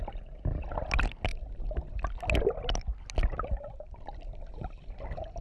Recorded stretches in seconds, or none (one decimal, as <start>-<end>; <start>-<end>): 0.0-5.4